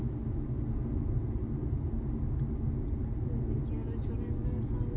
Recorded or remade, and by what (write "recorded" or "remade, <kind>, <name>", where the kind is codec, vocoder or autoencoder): recorded